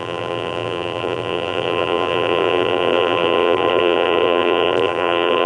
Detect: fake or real fake